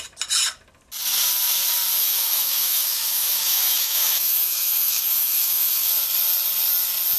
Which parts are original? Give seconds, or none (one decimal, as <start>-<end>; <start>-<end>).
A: 0.0-2.0; 5.9-7.2